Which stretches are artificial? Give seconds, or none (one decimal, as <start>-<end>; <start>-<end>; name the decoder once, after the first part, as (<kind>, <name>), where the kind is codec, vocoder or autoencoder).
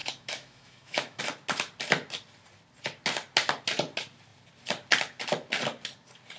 0.0-1.2 (autoencoder, DAC-VAE)